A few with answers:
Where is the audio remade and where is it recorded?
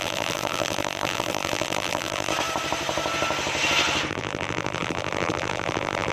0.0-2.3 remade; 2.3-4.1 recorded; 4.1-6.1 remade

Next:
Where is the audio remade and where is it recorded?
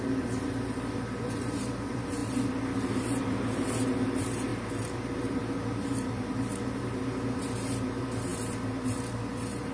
0.0-9.7 remade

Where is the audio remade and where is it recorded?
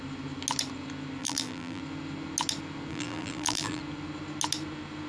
0.0-1.2 recorded; 1.2-1.8 remade; 1.8-2.9 recorded; 2.9-3.8 remade; 3.8-5.1 recorded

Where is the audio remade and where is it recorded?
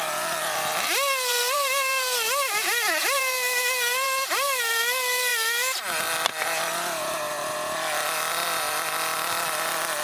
0.0-0.7 remade; 0.7-1.3 recorded; 1.3-10.0 remade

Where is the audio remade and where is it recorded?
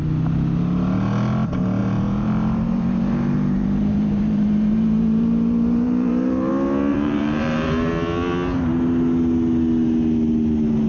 0.0-1.8 recorded; 1.8-6.5 remade; 6.5-6.9 recorded; 6.9-7.9 remade; 7.9-10.9 recorded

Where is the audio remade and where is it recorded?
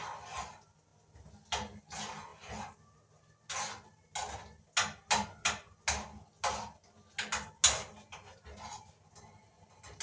0.0-10.0 recorded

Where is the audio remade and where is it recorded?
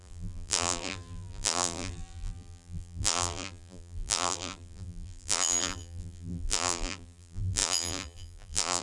0.0-8.8 remade